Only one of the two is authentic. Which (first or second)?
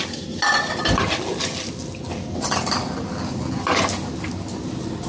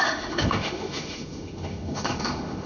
first